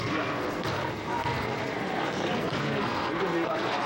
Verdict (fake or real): fake